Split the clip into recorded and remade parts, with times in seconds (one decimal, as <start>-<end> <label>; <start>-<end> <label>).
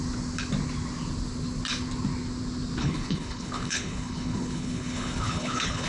0.0-2.8 recorded; 2.8-5.9 remade